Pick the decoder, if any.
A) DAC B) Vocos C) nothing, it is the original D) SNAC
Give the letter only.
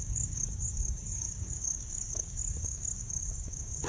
A